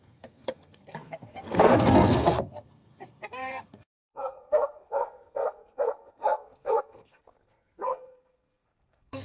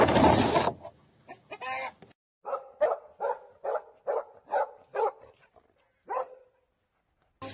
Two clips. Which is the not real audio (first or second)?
first